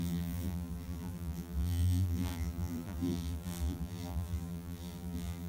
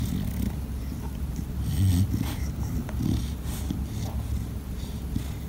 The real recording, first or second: second